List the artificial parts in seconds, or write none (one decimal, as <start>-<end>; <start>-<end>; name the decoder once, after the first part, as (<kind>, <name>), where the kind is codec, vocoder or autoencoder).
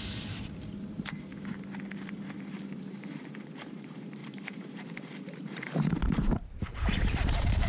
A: 0.0-1.3 (vocoder, BigVGAN v2); 2.8-7.7